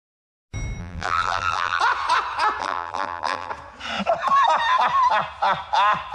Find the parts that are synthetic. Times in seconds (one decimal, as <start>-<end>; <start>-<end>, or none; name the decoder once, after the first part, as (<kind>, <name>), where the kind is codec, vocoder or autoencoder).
0.8-1.8 (vocoder, BigVGAN v2); 2.6-3.5